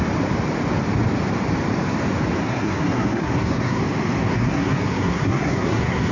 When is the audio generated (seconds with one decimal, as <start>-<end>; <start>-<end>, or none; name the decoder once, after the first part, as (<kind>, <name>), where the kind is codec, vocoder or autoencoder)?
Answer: 2.4-3.8 (codec, SNAC); 4.2-6.1